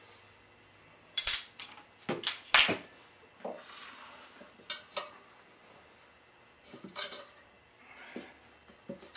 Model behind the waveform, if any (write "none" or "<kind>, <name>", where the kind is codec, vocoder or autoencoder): none